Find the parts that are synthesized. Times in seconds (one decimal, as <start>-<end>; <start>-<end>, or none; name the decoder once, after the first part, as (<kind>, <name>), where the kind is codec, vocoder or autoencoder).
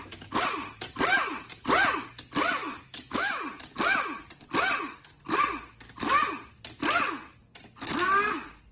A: 2.6-3.4 (autoencoder, DAC-VAE)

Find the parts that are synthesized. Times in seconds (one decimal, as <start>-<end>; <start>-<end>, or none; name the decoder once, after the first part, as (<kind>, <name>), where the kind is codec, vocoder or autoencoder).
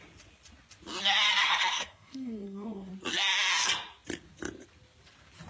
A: 1.4-2.9 (codec, SNAC)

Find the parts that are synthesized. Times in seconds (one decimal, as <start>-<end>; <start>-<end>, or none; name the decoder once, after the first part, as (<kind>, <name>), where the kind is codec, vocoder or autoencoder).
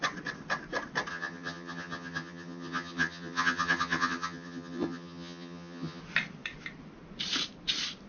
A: 1.1-6.0 (vocoder, HiFi-GAN)